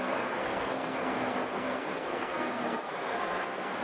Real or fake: fake